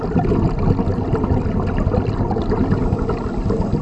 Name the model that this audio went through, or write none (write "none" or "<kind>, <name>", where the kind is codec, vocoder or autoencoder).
none